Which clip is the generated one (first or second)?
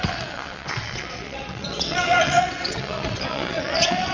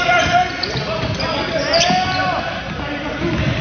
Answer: first